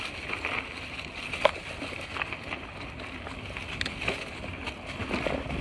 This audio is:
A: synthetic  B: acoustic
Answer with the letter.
B